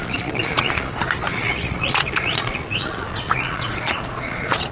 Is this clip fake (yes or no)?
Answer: yes